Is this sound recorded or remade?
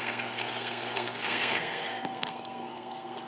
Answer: remade